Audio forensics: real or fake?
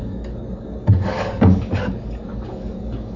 fake